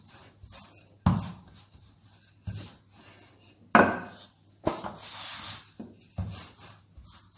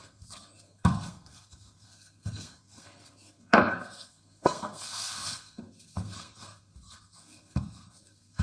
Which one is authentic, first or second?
first